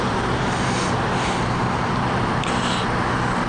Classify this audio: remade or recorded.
recorded